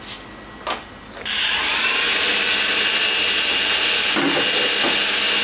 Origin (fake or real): real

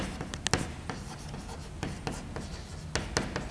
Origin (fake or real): real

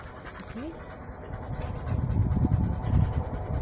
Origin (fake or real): real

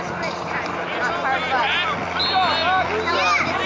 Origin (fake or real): real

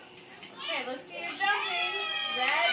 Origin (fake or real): real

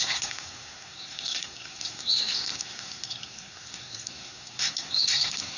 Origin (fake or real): fake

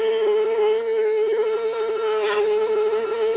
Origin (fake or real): fake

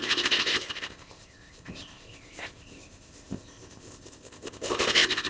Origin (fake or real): fake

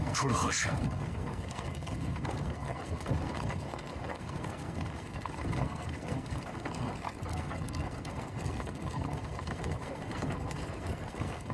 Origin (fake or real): fake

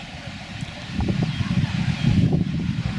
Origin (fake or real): real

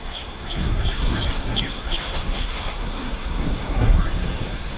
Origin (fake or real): fake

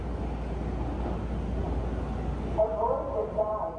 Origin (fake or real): real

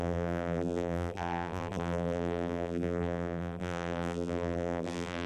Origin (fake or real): fake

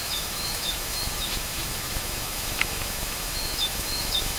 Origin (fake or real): fake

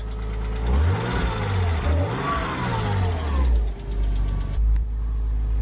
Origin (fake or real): real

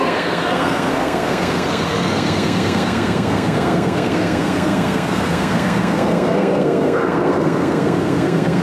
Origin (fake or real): fake